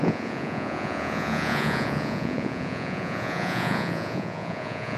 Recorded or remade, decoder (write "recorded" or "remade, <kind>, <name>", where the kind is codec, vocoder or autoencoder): remade, vocoder, Vocos